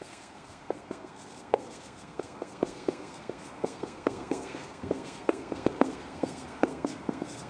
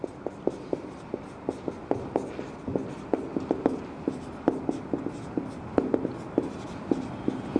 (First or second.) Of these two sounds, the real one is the second